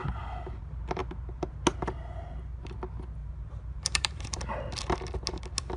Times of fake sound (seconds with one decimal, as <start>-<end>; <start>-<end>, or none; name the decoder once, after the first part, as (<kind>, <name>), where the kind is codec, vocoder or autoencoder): 3.2-4.4 (vocoder, BigVGAN v2)